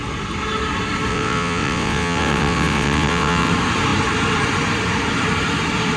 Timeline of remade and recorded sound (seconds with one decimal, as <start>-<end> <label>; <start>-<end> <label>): 0.0-1.1 recorded; 1.1-3.5 remade; 3.5-6.0 recorded